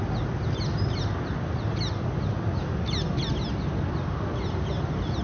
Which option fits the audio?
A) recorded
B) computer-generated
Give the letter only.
A